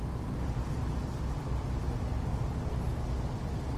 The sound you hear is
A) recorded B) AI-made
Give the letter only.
A